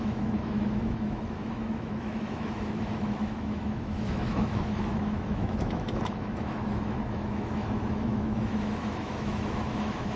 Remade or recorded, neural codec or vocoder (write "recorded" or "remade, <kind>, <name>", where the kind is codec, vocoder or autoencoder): remade, autoencoder, DAC-VAE